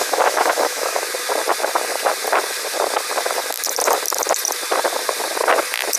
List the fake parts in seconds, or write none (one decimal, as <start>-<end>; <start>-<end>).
0.0-1.0